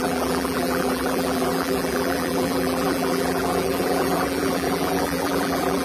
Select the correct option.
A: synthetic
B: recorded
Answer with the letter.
A